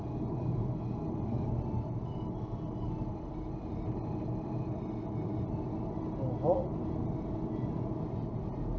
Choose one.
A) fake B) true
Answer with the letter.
B